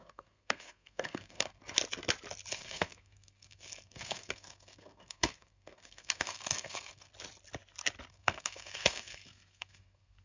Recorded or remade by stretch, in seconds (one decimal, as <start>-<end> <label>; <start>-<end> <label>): 0.0-1.6 remade; 1.6-2.5 recorded; 2.5-7.1 remade; 7.1-8.1 recorded; 8.1-10.2 remade